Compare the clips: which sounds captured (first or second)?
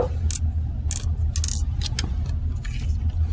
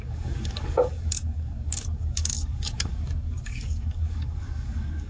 first